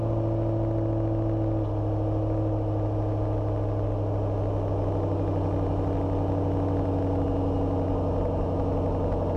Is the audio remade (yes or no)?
no